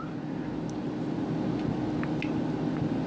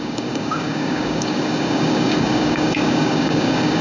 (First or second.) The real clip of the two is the first